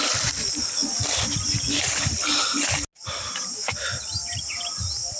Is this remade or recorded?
recorded